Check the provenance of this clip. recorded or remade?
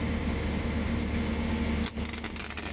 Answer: recorded